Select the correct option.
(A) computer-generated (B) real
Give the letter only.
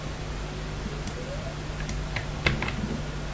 B